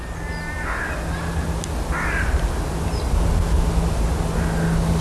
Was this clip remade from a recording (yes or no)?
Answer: no